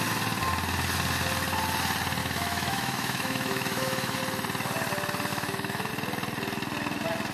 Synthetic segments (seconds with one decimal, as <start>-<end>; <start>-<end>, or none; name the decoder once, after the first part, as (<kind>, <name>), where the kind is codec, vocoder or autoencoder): 2.2-4.2 (autoencoder, DAC-VAE); 5.3-5.9